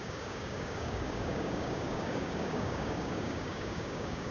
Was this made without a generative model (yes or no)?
no